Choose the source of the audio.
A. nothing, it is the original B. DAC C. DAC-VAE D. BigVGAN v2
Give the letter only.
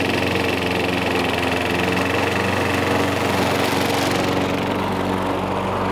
A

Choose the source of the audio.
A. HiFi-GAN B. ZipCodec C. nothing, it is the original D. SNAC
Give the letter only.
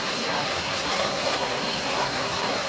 D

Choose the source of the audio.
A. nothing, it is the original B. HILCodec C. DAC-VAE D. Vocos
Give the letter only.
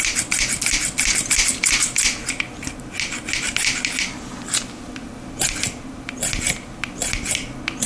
A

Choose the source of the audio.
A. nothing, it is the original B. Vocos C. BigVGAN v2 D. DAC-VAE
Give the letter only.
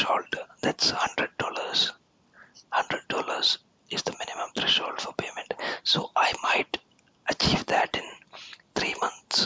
A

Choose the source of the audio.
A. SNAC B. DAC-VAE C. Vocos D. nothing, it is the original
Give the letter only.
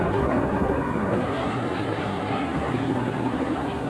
A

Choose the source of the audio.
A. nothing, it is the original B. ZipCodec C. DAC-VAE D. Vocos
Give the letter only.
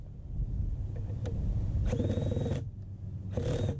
A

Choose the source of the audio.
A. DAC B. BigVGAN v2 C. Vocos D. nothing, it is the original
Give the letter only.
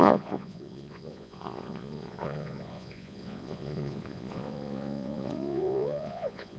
C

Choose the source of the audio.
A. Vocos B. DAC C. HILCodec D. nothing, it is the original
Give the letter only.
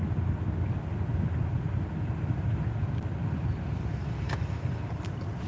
D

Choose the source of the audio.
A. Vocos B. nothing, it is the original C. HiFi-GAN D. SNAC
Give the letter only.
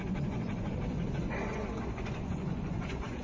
A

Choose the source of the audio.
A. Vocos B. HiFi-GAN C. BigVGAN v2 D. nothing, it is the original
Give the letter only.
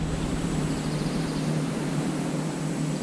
C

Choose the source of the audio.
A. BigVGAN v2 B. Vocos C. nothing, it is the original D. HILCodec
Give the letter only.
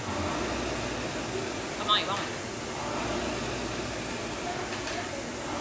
C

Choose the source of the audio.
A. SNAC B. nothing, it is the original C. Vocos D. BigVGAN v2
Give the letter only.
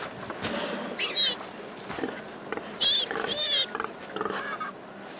B